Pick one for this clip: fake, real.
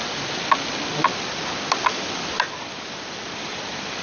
real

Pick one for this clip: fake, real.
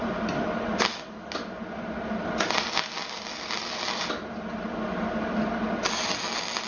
real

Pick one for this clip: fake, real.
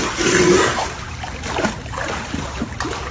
real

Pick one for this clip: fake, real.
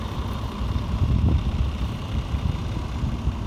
fake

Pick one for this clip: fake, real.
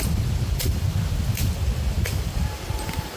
real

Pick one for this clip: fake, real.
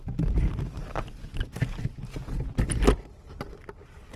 real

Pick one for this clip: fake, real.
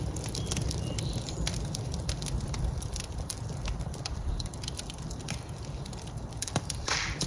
fake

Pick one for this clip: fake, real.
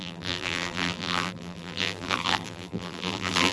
fake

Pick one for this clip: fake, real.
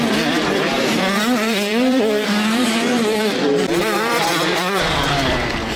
fake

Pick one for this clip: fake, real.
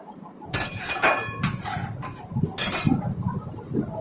fake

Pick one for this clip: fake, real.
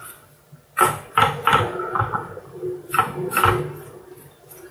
real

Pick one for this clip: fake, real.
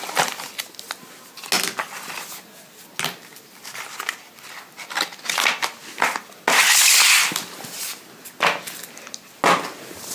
real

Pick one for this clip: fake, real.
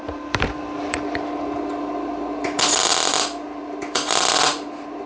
fake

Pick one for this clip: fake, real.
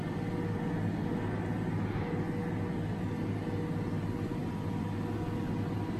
real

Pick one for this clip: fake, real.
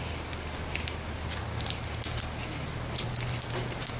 fake